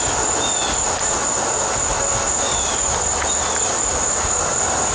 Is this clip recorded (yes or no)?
yes